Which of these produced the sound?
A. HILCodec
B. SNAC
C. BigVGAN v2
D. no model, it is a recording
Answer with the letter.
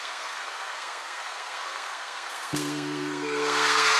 B